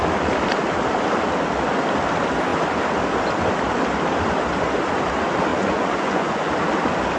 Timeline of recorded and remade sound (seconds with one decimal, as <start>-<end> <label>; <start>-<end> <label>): 0.0-5.5 recorded; 5.5-6.5 remade; 6.5-7.2 recorded